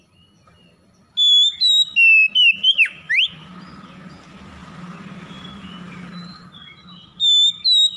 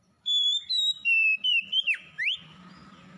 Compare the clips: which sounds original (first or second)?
first